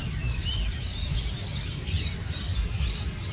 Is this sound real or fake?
real